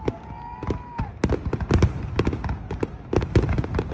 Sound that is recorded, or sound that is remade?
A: recorded